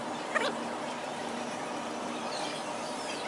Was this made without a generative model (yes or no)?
no